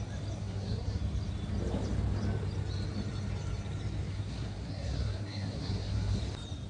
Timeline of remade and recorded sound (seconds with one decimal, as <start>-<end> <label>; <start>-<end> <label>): 0.0-0.4 recorded; 0.4-1.0 remade; 1.0-4.1 recorded; 4.1-6.2 remade; 6.2-6.7 recorded